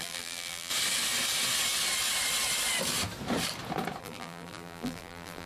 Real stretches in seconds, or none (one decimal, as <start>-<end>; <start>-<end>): 0.7-4.0